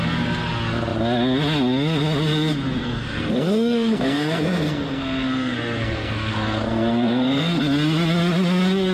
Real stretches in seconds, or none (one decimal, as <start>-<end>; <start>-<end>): 0.0-2.8; 7.6-8.9